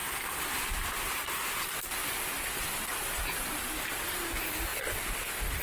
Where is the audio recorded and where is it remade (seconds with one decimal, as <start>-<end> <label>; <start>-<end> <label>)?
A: 0.0-2.0 recorded; 2.0-2.5 remade; 2.5-4.7 recorded; 4.7-5.6 remade